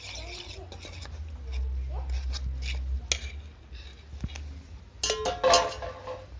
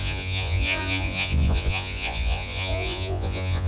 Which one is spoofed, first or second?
second